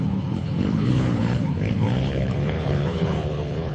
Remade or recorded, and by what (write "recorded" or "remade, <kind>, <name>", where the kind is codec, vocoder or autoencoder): remade, codec, HILCodec